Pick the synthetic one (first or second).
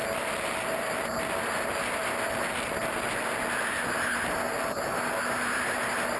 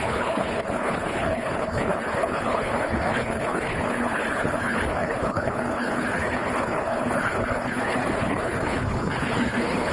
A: second